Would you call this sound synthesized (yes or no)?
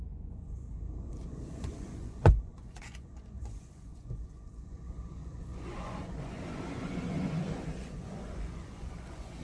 yes